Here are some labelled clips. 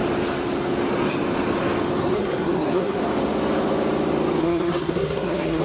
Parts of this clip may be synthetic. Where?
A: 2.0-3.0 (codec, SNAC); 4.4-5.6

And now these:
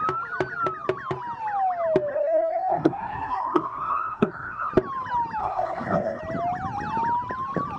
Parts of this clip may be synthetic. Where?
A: 2.1-4.7 (codec, SNAC); 5.4-6.2

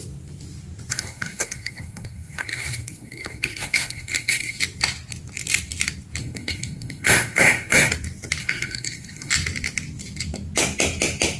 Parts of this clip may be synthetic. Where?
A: 0.9-4.6 (codec, SNAC); 6.2-7.9; 8.4-9.3